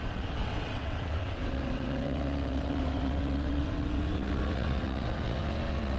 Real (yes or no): no